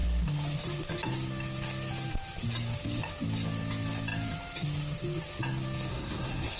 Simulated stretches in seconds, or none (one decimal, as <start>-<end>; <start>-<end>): 5.9-6.6